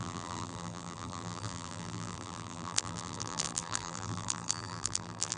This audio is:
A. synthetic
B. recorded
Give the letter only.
A